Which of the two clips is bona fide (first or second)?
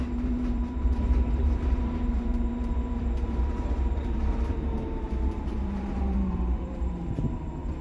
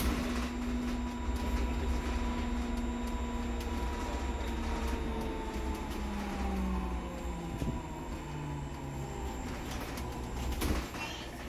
second